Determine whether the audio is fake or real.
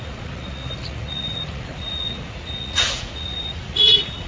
fake